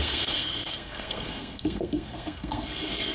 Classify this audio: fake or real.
fake